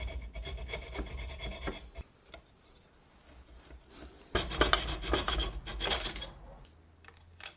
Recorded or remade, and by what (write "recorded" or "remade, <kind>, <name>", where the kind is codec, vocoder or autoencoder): recorded